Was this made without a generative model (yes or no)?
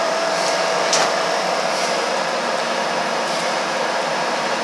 no